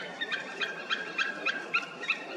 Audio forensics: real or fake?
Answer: fake